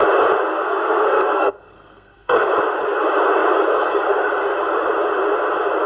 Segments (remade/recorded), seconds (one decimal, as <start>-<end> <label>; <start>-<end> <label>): 0.0-0.5 recorded; 0.5-2.5 remade; 2.5-5.9 recorded